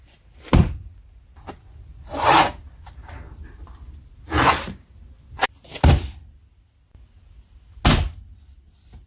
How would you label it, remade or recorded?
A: recorded